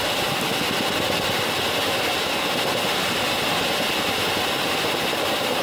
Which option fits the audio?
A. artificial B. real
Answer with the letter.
B